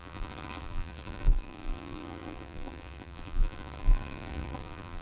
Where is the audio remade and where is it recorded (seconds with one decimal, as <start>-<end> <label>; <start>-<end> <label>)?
0.0-5.0 remade